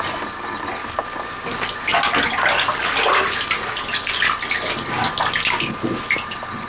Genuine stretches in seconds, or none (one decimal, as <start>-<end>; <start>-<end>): 0.0-6.7